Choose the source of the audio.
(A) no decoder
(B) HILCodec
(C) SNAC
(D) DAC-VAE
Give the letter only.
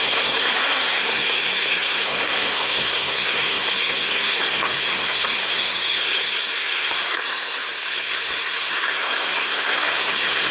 C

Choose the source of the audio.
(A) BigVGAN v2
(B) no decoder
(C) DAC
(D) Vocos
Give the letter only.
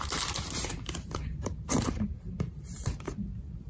A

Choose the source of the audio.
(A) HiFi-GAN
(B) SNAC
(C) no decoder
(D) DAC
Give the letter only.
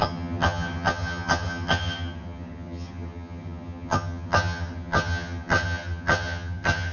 A